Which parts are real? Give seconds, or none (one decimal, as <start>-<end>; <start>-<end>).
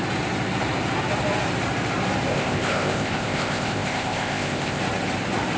0.0-2.3; 4.8-5.6